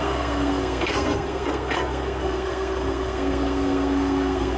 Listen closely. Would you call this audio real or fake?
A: fake